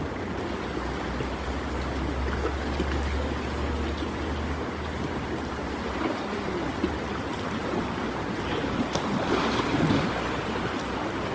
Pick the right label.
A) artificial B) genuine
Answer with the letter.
B